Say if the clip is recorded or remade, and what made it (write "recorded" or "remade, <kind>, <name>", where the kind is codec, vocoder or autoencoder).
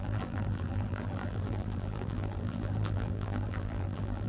remade, vocoder, BigVGAN v2